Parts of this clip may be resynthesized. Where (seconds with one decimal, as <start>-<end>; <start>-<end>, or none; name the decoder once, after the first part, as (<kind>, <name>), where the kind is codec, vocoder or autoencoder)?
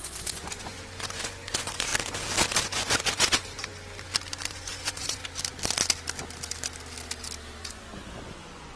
0.0-1.9 (vocoder, Vocos); 2.6-3.7; 4.5-5.2; 7.6-8.8